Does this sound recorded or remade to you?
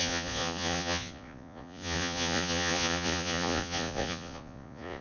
remade